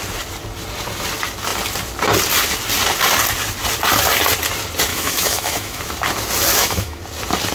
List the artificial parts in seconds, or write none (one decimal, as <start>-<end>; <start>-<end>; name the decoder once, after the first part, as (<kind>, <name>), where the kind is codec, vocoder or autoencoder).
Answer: 4.9-5.8 (autoencoder, DAC-VAE); 6.5-7.0